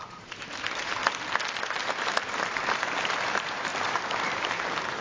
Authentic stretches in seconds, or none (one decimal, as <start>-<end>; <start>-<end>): 1.0-2.8